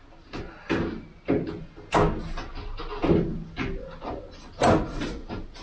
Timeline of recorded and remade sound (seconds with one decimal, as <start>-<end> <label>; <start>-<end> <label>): 0.0-5.6 recorded